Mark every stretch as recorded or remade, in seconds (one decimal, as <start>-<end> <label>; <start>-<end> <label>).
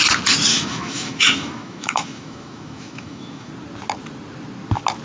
0.0-0.5 recorded; 0.5-3.5 remade; 3.5-5.0 recorded